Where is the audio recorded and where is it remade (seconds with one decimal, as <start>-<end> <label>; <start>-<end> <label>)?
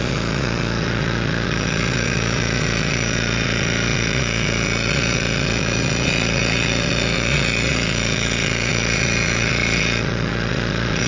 0.0-11.1 remade